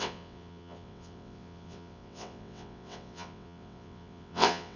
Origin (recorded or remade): remade